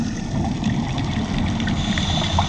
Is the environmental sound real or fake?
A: real